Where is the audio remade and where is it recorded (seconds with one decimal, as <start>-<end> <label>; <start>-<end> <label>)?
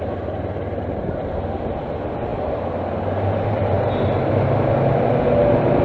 0.0-5.8 recorded